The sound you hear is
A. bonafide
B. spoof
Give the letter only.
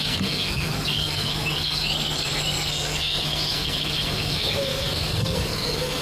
B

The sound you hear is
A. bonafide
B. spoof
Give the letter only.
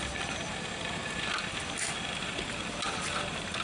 A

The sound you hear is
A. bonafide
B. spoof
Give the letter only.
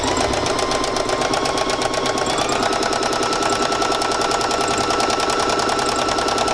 A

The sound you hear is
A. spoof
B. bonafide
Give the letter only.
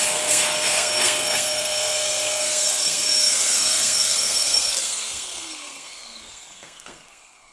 A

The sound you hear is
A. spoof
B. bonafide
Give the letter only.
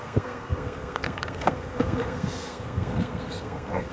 A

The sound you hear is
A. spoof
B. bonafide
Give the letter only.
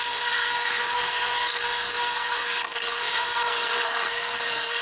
A